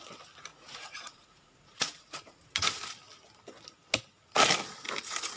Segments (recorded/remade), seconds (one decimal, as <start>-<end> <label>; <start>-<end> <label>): 0.0-0.5 recorded; 0.5-2.8 remade; 2.8-5.4 recorded